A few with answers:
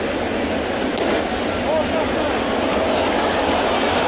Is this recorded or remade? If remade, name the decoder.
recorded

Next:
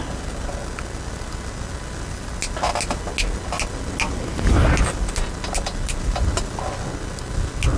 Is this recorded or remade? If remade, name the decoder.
recorded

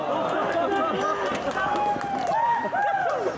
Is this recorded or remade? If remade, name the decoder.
recorded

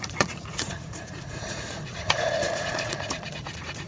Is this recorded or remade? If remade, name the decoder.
remade, vocoder, Vocos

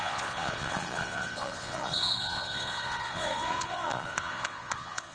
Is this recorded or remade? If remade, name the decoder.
remade, vocoder, Vocos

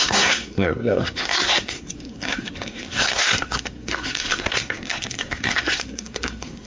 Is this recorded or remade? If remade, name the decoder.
remade, codec, SNAC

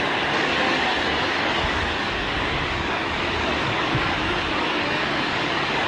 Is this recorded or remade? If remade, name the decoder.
remade, codec, DAC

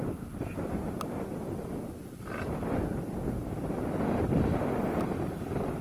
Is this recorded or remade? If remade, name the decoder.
remade, vocoder, BigVGAN v2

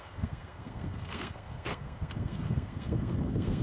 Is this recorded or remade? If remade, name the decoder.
remade, codec, SNAC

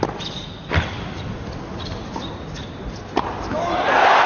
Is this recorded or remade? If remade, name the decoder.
recorded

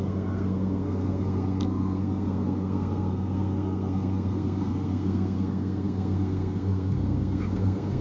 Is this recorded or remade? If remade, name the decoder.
remade, codec, SNAC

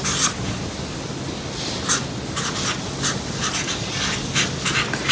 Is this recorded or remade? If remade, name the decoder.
recorded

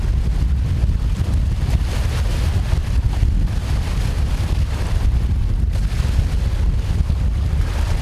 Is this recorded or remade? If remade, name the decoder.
recorded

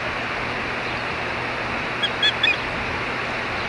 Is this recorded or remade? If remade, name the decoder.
recorded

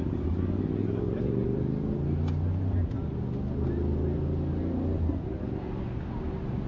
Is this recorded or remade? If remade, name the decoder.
recorded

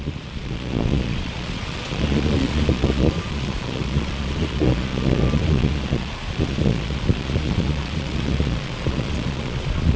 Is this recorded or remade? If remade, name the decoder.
remade, vocoder, Vocos